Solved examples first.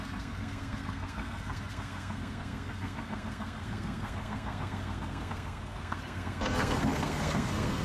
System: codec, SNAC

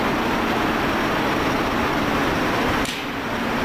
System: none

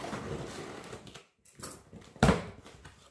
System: none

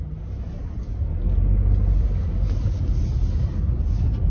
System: none